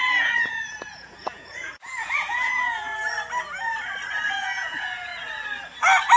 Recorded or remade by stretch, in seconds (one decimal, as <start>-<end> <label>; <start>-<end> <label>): 0.0-2.9 remade; 2.9-4.3 recorded; 4.3-5.1 remade; 5.1-6.2 recorded